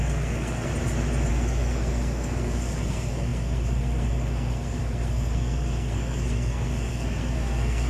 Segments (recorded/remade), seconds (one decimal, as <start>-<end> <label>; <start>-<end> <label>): 0.0-0.7 remade; 0.7-1.3 recorded; 1.3-7.9 remade